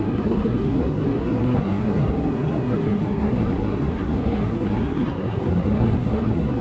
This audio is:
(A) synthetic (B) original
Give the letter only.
A